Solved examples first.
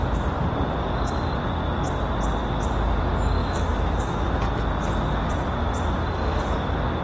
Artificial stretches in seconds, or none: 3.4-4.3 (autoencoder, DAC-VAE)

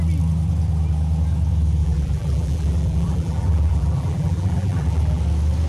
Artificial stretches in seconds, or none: 1.8-5.2 (vocoder, BigVGAN v2)